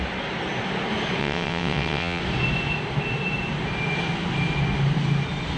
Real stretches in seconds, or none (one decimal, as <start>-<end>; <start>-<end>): 0.0-1.2; 2.2-5.6